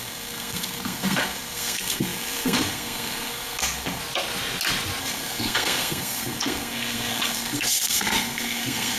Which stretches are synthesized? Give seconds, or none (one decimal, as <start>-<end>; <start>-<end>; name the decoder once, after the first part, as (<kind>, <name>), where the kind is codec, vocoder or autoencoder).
0.0-4.0 (codec, SNAC); 5.0-9.0